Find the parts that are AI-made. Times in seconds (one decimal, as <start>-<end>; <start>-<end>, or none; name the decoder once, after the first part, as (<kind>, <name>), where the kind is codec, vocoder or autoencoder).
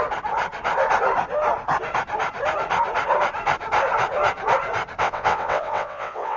5.0-6.4 (vocoder, WaveNeXt)